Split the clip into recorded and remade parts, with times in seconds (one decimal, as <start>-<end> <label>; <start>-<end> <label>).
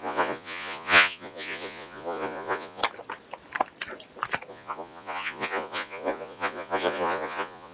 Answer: 0.0-2.8 remade; 2.8-4.5 recorded; 4.5-7.7 remade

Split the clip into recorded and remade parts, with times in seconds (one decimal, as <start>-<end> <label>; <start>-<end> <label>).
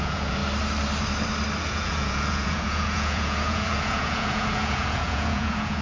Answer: 0.0-0.4 remade; 0.4-1.6 recorded; 1.6-5.8 remade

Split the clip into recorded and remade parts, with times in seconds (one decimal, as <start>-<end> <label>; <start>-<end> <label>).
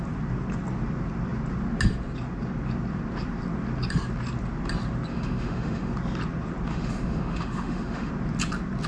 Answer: 0.0-5.1 recorded; 5.1-5.9 remade; 5.9-6.7 recorded; 6.7-8.1 remade; 8.1-8.9 recorded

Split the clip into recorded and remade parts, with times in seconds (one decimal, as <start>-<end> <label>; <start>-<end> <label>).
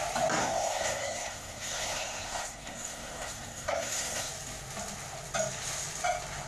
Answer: 0.0-0.4 recorded; 0.4-4.3 remade; 4.3-6.5 recorded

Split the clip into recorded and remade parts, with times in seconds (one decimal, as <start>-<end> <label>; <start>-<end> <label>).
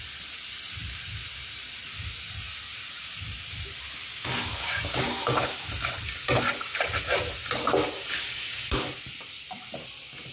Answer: 0.0-4.1 recorded; 4.1-5.7 remade; 5.7-8.1 recorded; 8.1-8.7 remade; 8.7-10.3 recorded